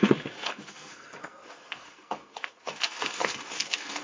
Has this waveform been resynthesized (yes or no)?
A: yes